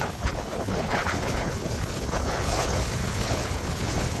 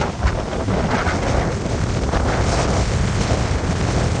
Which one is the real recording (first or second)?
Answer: second